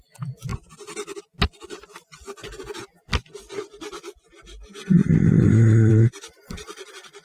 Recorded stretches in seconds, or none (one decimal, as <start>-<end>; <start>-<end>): 0.0-7.2